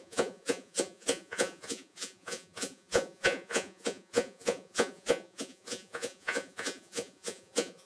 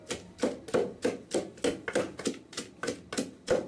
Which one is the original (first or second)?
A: second